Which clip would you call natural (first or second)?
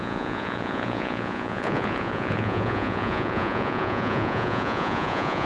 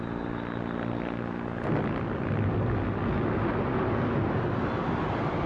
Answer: second